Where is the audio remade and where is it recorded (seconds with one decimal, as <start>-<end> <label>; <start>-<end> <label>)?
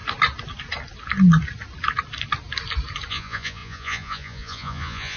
0.0-3.1 recorded; 3.1-5.2 remade